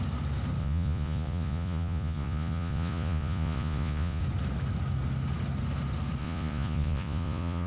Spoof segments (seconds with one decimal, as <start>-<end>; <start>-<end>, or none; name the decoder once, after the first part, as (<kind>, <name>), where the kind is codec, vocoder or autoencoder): 0.6-4.2 (vocoder, Vocos); 6.2-7.7